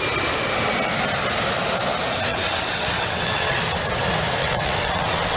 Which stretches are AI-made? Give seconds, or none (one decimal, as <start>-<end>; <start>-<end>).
2.3-3.6; 4.4-5.4